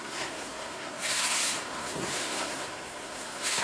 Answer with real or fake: fake